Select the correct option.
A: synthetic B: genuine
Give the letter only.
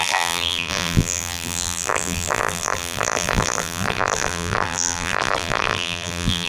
A